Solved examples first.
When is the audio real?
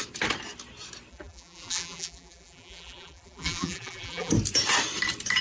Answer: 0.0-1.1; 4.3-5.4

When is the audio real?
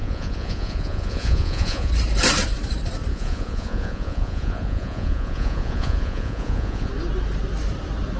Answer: 1.9-3.1; 6.9-8.2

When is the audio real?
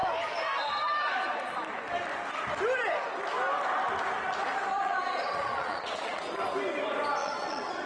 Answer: 0.0-4.7; 6.3-7.2